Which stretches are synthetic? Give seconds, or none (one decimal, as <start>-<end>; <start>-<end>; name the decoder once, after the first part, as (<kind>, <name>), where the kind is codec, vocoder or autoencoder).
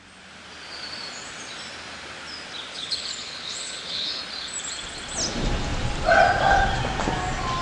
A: 2.7-4.2 (codec, HILCodec)